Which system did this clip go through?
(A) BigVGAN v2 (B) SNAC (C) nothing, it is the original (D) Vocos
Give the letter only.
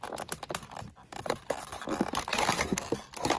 C